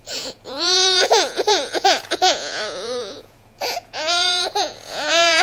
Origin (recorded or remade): remade